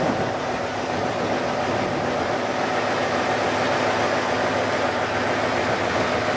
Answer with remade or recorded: recorded